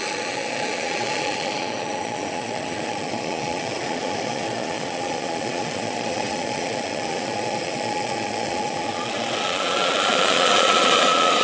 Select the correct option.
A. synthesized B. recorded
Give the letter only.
A